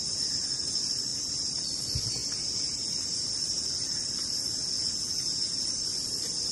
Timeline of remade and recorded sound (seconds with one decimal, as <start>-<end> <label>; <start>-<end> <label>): 0.0-2.2 remade; 2.2-3.3 recorded; 3.3-4.6 remade; 4.6-5.6 recorded; 5.6-6.5 remade